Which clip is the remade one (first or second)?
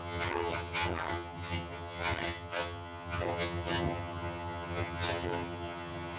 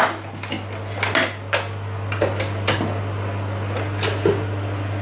first